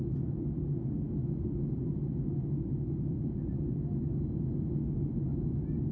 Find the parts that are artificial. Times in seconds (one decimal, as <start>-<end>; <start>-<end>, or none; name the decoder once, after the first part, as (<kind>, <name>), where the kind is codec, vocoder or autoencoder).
none